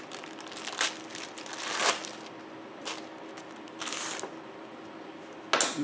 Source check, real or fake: real